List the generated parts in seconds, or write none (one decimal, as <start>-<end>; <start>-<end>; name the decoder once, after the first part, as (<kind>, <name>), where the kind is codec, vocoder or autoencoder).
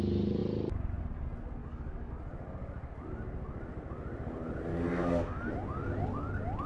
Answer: 1.6-2.1 (codec, DAC); 4.7-5.5